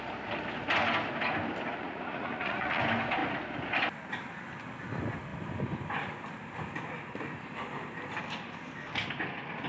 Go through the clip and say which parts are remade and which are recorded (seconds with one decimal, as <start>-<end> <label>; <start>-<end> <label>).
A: 0.0-1.8 recorded; 1.8-2.8 remade; 2.8-9.7 recorded